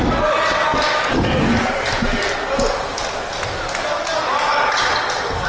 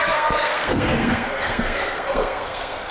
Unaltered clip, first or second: first